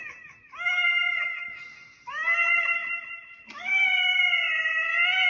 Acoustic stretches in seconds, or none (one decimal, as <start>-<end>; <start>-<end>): 0.0-2.8; 4.5-5.3